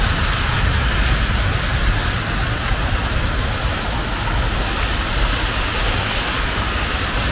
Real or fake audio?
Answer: real